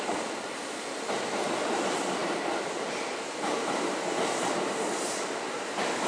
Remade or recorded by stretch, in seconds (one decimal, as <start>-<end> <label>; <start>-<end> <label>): 0.0-6.1 recorded